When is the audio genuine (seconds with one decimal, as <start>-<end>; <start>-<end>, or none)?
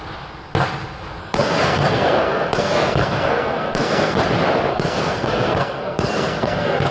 0.0-1.2; 4.2-4.7